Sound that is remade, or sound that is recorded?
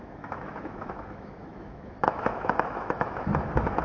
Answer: remade